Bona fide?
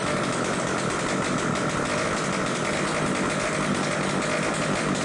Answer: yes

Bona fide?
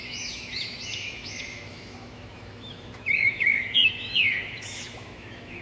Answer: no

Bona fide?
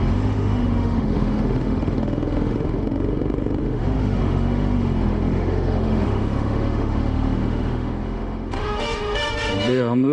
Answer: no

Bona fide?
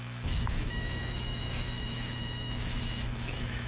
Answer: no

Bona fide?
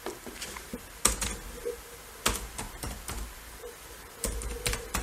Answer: yes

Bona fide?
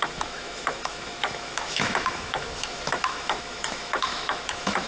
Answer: no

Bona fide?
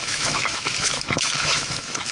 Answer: no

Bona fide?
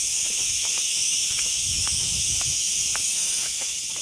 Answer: no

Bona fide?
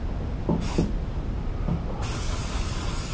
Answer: yes